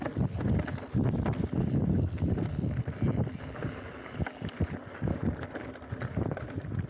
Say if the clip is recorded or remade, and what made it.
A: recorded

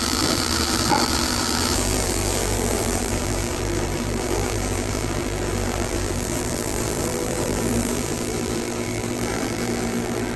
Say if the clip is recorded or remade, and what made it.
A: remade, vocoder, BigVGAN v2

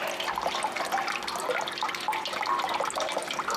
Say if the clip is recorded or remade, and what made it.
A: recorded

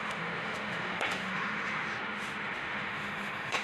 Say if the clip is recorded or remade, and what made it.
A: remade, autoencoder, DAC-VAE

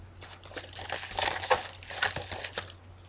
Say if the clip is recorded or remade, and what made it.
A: recorded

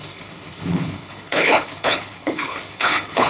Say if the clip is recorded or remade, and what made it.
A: remade, codec, HILCodec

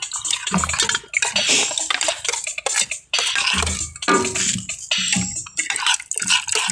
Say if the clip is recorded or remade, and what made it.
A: recorded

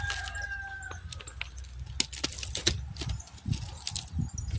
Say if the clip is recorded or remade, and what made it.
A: recorded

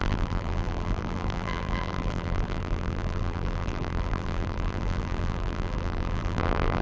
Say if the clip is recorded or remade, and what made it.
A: remade, vocoder, BigVGAN v2